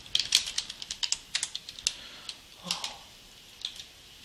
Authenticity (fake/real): real